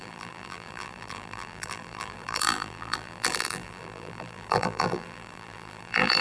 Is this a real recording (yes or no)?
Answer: no